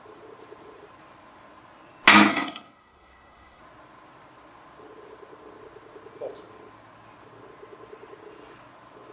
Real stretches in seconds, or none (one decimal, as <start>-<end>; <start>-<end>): 0.0-2.3; 3.6-9.1

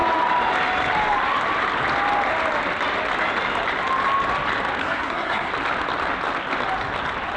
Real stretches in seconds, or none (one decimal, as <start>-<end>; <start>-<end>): 0.0-4.8; 5.5-7.4

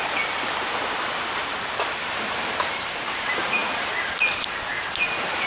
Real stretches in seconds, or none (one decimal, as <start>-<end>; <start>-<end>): 0.0-5.5

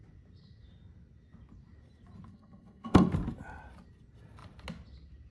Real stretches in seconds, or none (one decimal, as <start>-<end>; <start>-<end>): 0.0-2.3; 3.1-5.3

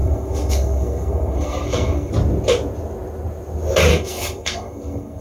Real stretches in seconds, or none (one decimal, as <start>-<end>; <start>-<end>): 2.1-3.9

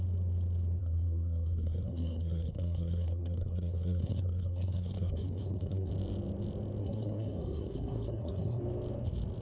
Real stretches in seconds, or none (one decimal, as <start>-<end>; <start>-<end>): 0.0-0.8; 5.9-6.8; 8.6-9.4

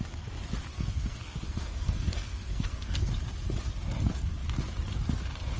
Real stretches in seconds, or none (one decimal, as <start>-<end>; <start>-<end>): 0.0-0.7; 3.1-5.6

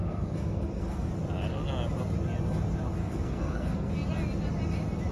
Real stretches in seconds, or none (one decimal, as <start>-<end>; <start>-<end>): 1.1-3.0; 3.9-5.1